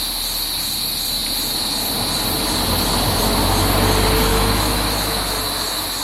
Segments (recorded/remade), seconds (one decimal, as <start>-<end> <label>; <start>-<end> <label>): 0.0-4.3 recorded; 4.3-5.4 remade; 5.4-6.0 recorded